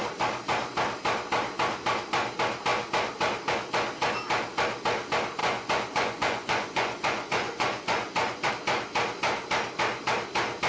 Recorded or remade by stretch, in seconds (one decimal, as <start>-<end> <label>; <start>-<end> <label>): 0.0-5.4 recorded; 5.4-8.5 remade; 8.5-10.7 recorded